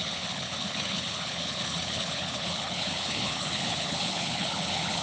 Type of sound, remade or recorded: remade